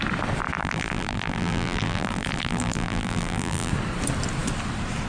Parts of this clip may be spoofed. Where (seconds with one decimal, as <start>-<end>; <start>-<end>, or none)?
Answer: 0.6-3.7